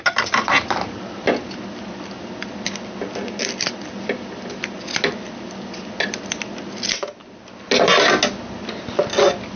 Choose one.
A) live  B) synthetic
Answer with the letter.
A